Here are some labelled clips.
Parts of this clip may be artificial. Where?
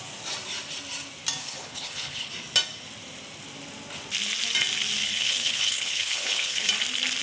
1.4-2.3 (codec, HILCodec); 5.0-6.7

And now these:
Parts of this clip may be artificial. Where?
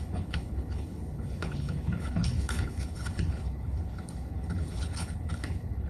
0.0-5.9 (codec, HILCodec)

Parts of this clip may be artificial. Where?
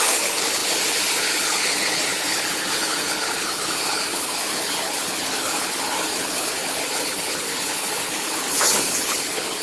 0.0-9.6 (codec, HILCodec)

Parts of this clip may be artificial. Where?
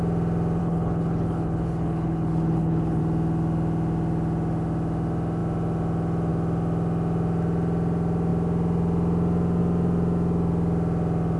0.6-3.0 (codec, HILCodec)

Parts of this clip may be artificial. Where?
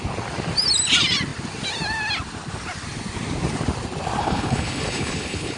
4.2-5.6 (codec, HILCodec)